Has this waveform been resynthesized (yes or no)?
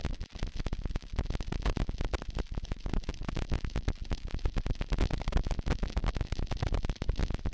no